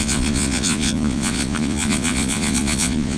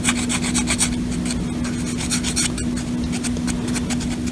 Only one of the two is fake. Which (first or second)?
first